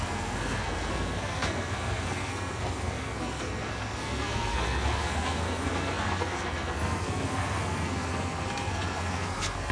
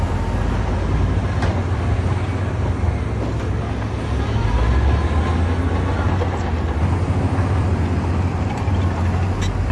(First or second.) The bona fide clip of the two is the second